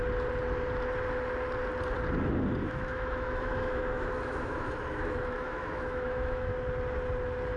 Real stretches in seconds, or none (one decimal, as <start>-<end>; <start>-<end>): 0.0-2.6; 6.5-7.6

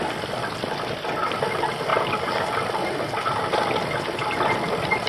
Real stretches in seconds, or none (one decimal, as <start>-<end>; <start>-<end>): 0.0-5.1

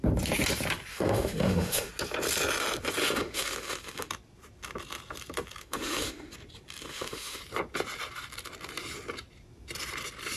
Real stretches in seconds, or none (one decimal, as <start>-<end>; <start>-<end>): 0.0-0.9; 1.9-3.0; 4.1-5.6; 6.3-6.8; 7.4-10.4

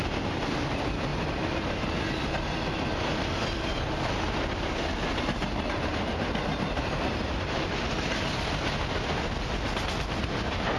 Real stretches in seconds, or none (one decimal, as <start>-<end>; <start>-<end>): 0.0-10.8

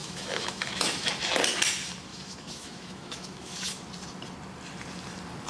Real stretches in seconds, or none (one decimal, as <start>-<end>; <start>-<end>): 1.1-2.1; 3.8-5.5

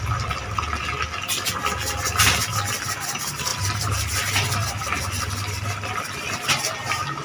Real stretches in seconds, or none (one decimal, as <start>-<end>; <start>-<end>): 0.0-7.2